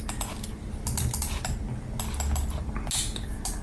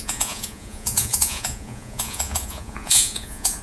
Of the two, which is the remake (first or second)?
second